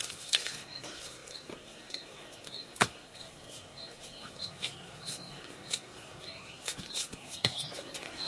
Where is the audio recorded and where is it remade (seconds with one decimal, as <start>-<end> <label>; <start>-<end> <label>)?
0.0-8.3 remade